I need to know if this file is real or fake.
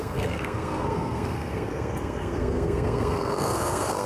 fake